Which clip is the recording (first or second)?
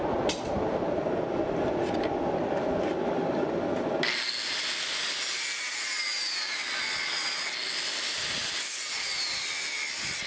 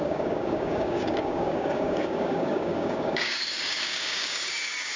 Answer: first